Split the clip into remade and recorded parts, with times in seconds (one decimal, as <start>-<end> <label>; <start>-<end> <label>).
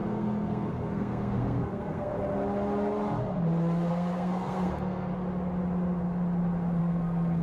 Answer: 0.0-2.1 remade; 2.1-3.9 recorded; 3.9-5.1 remade; 5.1-6.8 recorded; 6.8-7.4 remade